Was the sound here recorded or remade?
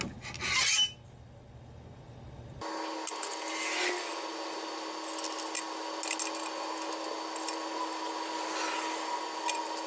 recorded